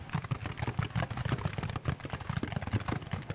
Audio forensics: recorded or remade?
recorded